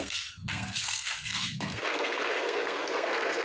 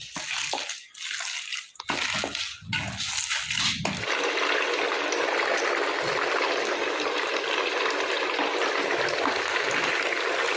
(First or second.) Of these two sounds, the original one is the second